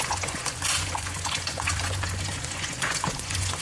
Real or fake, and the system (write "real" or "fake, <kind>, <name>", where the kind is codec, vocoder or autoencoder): fake, vocoder, Vocos